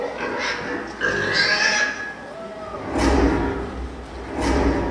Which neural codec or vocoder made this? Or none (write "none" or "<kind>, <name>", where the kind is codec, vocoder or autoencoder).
none